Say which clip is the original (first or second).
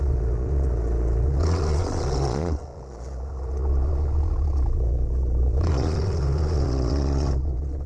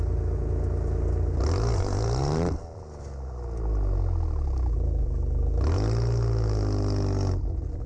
second